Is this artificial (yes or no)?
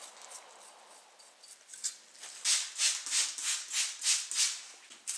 no